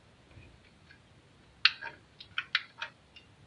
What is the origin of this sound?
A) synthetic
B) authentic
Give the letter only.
B